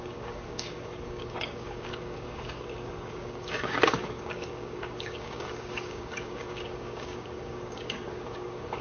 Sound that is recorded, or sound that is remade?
remade